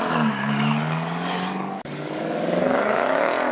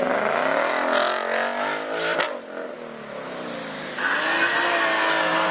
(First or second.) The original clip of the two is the second